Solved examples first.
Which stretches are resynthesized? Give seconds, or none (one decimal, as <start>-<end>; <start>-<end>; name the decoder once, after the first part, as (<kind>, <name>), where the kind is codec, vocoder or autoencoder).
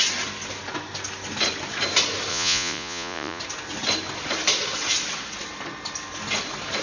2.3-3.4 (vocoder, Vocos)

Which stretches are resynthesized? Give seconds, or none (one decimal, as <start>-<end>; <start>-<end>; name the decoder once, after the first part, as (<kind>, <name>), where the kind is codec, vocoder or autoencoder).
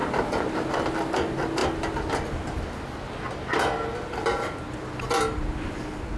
none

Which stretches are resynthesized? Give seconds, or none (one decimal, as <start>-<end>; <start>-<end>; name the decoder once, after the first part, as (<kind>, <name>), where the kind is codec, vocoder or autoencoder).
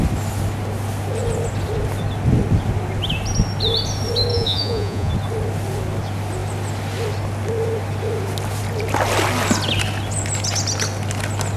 4.3-5.1 (vocoder, Vocos)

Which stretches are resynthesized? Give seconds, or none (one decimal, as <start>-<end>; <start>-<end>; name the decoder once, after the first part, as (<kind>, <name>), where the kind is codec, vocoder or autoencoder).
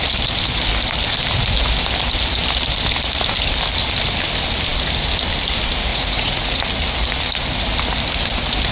5.9-6.6 (vocoder, Vocos)